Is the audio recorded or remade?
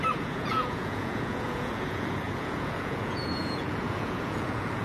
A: remade